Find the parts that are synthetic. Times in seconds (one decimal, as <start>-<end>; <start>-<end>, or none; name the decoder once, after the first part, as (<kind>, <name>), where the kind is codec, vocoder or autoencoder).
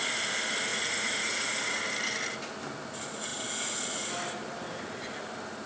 0.7-1.8 (vocoder, Vocos); 3.3-4.1